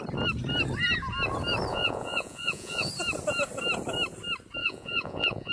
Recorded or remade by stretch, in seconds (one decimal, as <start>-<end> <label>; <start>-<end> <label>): 0.0-1.7 recorded; 1.7-2.9 remade; 2.9-4.6 recorded; 4.6-5.5 remade